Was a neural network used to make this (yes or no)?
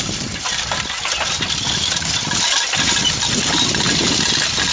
no